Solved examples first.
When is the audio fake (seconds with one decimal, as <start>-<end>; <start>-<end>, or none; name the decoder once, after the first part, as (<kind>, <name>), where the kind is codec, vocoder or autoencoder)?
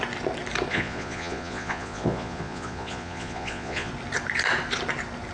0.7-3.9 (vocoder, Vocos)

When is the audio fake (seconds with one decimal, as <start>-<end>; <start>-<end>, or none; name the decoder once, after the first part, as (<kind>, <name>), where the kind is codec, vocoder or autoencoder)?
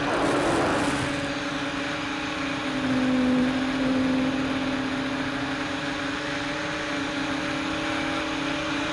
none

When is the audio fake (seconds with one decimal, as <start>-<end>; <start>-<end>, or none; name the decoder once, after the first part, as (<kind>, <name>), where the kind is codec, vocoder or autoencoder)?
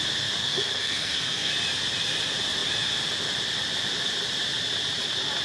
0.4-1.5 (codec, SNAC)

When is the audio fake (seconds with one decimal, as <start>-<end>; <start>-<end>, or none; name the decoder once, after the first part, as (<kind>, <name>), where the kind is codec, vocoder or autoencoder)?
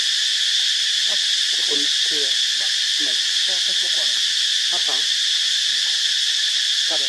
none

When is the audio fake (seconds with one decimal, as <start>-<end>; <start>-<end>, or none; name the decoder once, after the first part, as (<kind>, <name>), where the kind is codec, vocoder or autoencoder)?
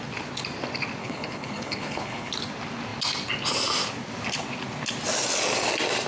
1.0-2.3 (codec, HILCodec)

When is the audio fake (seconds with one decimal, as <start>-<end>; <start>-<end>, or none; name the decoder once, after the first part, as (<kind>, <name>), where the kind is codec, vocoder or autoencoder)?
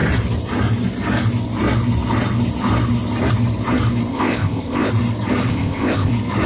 4.1-4.9 (codec, ZipCodec); 5.5-6.1